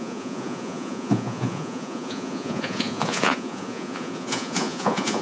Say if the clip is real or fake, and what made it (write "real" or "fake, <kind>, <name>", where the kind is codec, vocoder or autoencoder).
fake, vocoder, Vocos